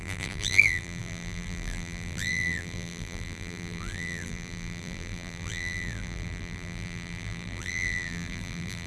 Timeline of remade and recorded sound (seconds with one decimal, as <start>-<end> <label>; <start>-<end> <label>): 0.0-8.9 remade